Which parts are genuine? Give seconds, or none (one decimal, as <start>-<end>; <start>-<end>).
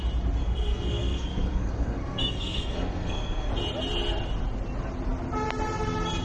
0.0-0.4; 3.5-6.2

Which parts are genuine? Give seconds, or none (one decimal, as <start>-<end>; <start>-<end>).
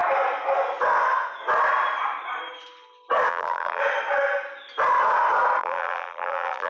0.0-3.3; 3.8-5.6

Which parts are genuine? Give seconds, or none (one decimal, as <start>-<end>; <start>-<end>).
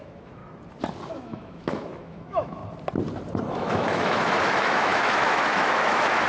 0.4-1.1; 2.6-3.5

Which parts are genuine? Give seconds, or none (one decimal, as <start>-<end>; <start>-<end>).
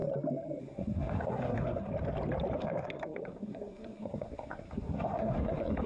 0.0-0.6; 1.9-2.6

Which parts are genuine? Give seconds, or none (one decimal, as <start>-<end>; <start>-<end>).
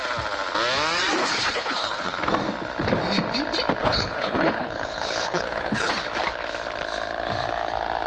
0.0-1.2; 2.2-3.8; 5.9-8.1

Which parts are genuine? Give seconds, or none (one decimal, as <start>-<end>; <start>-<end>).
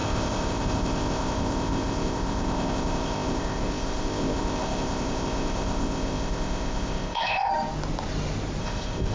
7.5-8.6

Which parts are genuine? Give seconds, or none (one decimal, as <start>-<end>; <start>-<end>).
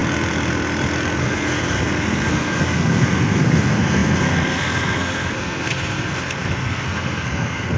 0.0-1.2